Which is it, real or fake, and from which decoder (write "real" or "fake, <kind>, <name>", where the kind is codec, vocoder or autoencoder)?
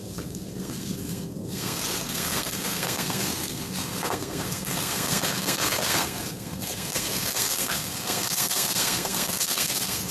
fake, codec, SNAC